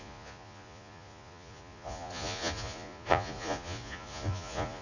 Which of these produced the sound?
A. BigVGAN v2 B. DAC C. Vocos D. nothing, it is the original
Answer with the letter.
C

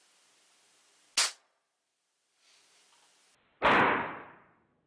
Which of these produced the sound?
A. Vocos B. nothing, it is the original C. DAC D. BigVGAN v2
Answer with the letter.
B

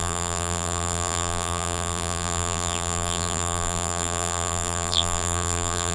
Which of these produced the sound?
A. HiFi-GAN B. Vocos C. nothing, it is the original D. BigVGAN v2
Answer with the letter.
D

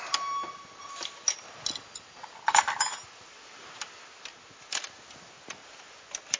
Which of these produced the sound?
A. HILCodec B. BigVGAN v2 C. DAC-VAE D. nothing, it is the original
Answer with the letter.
D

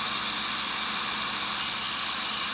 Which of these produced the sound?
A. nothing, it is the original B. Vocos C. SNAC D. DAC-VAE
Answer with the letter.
A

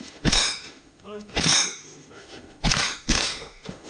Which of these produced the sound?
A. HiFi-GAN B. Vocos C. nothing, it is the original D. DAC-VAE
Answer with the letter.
D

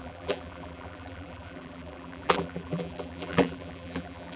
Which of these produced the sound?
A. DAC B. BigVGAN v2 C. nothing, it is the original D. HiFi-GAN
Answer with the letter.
B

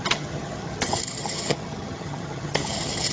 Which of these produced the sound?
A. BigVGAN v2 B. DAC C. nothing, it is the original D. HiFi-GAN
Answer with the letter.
D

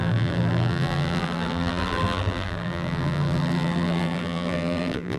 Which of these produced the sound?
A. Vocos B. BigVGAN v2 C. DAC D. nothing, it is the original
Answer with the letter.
B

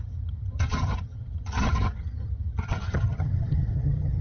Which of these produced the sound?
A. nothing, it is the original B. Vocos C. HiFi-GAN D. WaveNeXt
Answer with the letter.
C